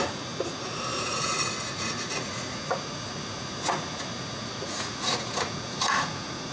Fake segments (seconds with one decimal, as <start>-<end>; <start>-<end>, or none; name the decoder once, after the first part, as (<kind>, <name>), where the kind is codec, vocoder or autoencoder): 0.0-6.5 (vocoder, Vocos)